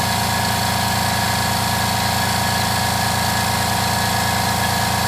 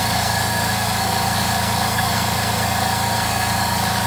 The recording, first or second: first